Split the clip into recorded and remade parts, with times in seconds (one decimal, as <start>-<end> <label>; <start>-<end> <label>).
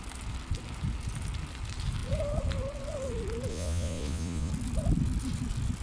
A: 0.0-3.5 recorded; 3.5-4.5 remade; 4.5-5.8 recorded